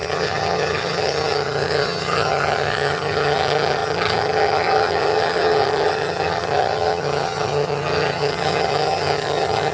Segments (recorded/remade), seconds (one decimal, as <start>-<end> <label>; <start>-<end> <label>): 0.0-9.7 remade